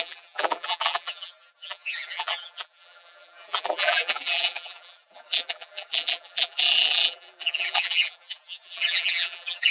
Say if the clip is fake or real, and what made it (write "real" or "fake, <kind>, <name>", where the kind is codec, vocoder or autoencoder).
fake, vocoder, BigVGAN v2